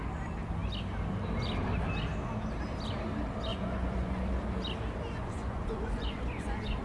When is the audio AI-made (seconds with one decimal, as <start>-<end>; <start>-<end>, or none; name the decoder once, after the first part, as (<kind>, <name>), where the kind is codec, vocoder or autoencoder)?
3.5-4.2 (vocoder, Vocos); 5.2-6.8